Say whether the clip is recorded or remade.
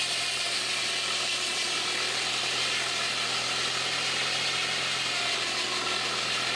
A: recorded